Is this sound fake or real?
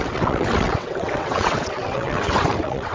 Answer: fake